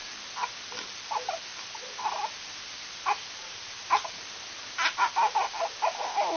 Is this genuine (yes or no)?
yes